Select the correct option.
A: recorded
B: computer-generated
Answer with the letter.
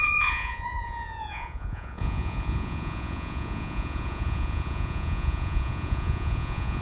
B